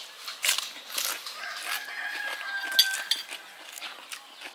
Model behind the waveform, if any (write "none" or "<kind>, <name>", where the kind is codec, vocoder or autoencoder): none